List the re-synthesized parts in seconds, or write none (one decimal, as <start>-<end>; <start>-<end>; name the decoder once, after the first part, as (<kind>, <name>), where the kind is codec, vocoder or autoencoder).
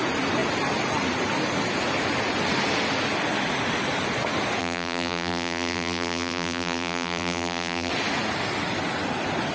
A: 4.6-7.9 (vocoder, BigVGAN v2)